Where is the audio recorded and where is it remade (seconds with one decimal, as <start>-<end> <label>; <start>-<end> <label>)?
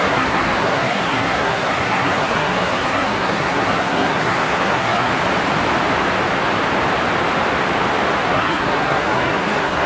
0.0-5.1 remade; 5.1-8.3 recorded; 8.3-9.9 remade